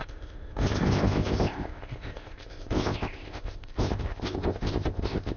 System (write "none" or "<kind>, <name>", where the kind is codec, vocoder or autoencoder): codec, ZipCodec